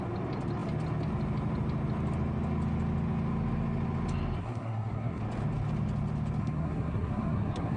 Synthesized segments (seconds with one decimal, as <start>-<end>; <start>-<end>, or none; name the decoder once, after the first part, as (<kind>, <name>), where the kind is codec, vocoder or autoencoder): 4.4-5.2 (codec, SNAC); 6.4-7.8